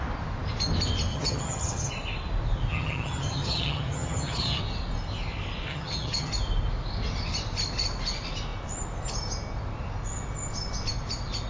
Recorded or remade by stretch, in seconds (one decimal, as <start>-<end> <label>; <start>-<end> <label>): 0.0-1.1 recorded; 1.1-1.9 remade; 1.9-2.7 recorded; 2.7-4.6 remade; 4.6-5.7 recorded; 5.7-6.3 remade; 6.3-11.5 recorded